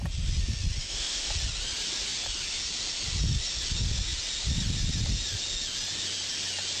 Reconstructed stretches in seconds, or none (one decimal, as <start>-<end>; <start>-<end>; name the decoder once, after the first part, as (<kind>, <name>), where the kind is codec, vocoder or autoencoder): 0.8-1.3 (autoencoder, DAC-VAE)